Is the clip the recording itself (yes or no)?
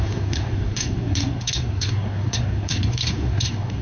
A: no